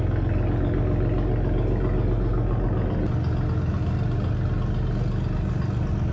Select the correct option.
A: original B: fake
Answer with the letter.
A